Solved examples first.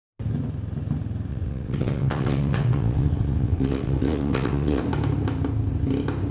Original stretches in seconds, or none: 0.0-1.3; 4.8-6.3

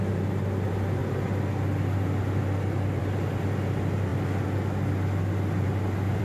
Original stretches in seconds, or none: 0.0-6.2

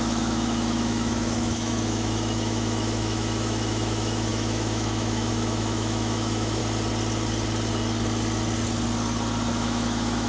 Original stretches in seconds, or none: 6.6-9.5

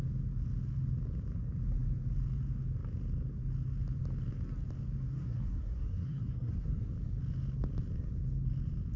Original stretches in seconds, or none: 0.0-5.1; 6.9-9.0

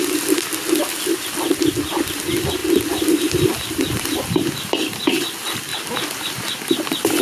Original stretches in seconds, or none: 0.0-7.2

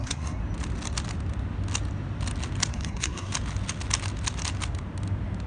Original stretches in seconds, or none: 0.4-2.7; 3.3-5.5

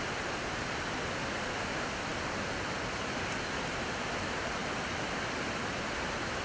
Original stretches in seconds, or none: 0.0-6.4

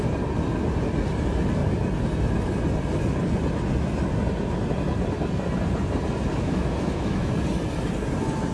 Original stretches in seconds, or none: 0.0-6.3; 7.3-8.5